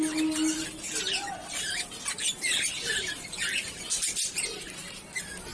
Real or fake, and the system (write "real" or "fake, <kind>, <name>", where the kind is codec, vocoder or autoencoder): real